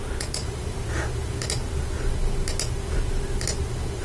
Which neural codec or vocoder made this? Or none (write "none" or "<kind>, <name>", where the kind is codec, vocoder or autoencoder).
none